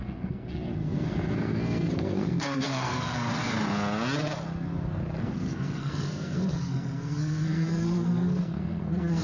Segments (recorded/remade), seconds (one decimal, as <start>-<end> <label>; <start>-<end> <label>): 0.0-3.4 remade; 3.4-5.2 recorded; 5.2-9.2 remade